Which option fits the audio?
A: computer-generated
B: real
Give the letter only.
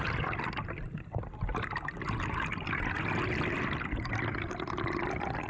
B